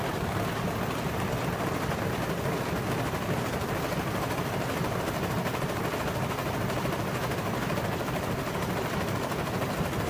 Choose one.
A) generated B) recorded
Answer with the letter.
B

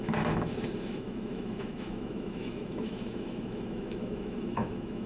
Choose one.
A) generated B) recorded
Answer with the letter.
A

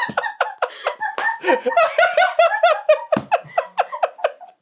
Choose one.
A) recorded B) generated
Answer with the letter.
A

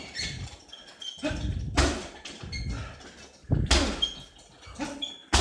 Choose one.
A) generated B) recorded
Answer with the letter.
B